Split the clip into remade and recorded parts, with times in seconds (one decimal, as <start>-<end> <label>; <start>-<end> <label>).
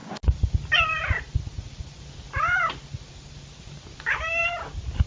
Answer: 0.0-5.1 recorded